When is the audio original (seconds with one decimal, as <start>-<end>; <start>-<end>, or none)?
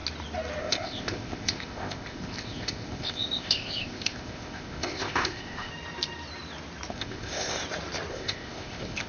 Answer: 0.0-0.6; 5.7-6.9; 7.6-8.1